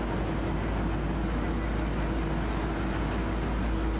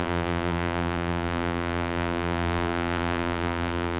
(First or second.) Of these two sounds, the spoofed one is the second